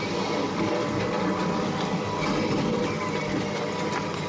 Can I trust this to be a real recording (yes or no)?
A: yes